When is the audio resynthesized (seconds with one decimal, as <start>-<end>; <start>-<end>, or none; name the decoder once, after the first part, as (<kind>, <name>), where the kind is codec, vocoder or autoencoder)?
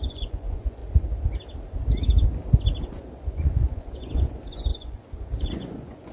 0.0-0.8 (vocoder, Vocos); 2.8-6.1